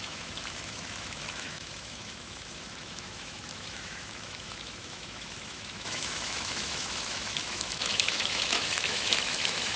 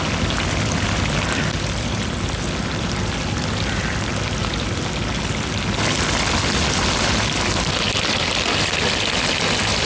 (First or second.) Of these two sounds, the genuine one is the second